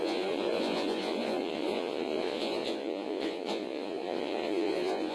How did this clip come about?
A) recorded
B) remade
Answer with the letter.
B